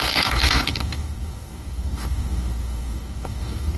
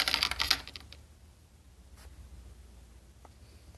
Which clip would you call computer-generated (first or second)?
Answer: first